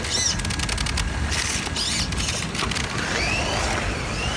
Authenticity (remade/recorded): recorded